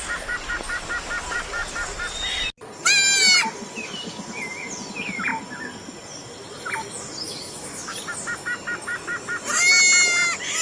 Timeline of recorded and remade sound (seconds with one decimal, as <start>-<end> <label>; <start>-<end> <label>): 0.0-7.3 recorded; 7.3-8.0 remade; 8.0-10.6 recorded